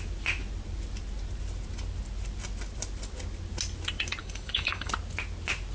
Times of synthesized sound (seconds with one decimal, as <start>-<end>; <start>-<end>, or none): 4.2-4.9